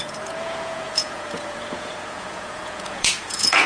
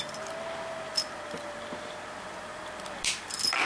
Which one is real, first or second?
second